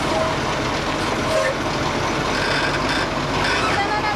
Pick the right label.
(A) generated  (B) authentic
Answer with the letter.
B